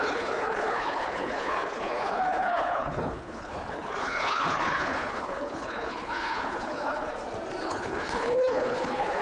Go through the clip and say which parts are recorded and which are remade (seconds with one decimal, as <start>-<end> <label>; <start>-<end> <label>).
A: 0.0-7.1 remade; 7.1-7.6 recorded; 7.6-9.2 remade